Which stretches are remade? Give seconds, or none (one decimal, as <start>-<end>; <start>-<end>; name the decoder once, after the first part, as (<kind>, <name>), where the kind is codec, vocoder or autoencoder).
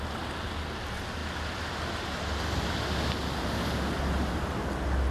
none